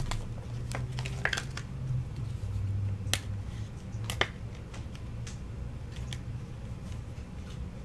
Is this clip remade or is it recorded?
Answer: recorded